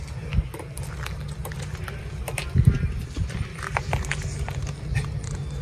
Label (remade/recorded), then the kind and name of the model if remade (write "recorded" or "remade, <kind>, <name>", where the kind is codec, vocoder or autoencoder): recorded